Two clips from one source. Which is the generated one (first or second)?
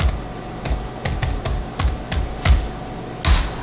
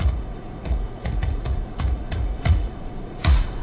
second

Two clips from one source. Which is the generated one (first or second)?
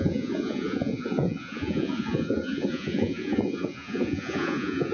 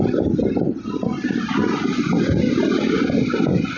first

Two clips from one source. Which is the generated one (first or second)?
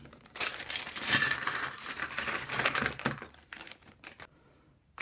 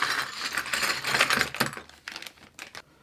first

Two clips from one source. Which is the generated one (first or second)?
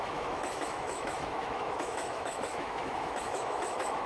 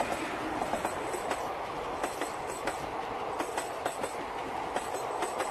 first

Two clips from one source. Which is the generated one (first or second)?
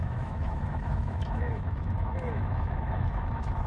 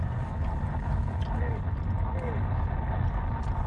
first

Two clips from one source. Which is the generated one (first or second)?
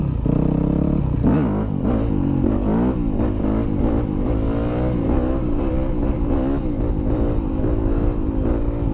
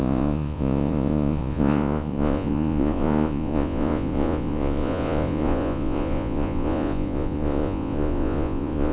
second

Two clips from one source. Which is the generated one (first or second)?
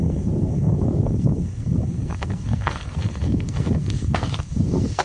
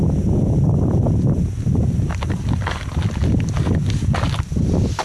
first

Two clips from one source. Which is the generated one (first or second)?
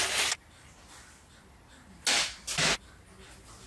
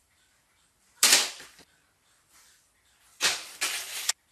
second